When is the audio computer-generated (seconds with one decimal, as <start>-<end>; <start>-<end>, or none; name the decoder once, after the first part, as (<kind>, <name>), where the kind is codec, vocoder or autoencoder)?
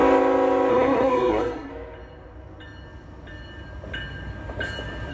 0.7-1.7 (codec, SNAC)